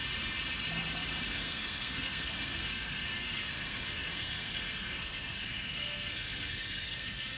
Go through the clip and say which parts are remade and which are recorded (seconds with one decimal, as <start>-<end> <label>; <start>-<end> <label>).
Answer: 0.0-1.3 recorded; 1.3-7.4 remade